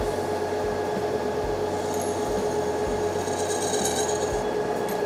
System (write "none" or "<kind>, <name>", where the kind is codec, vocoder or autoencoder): none